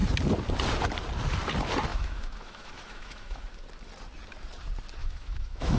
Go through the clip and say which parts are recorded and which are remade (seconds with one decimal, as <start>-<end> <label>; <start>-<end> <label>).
0.0-1.9 recorded; 1.9-3.5 remade; 3.5-5.0 recorded; 5.0-5.8 remade